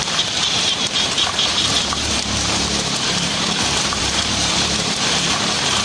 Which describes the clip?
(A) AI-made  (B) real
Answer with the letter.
A